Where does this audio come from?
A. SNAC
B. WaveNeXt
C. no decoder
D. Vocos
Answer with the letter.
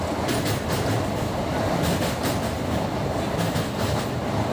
C